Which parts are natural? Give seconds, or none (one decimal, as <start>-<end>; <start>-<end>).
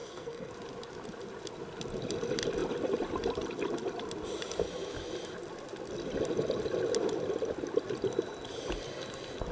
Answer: 0.5-9.5